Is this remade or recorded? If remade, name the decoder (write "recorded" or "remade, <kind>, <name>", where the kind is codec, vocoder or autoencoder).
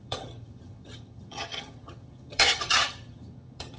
remade, vocoder, HiFi-GAN